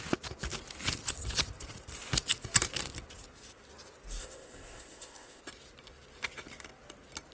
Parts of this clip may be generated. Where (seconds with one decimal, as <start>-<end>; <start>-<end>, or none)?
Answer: 4.2-5.4